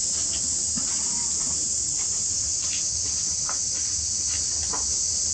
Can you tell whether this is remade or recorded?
recorded